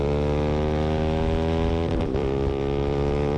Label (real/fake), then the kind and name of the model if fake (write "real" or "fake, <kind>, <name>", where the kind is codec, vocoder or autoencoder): fake, vocoder, BigVGAN v2